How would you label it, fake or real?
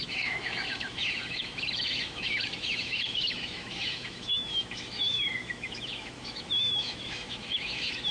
fake